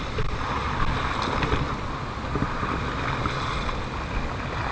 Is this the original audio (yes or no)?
yes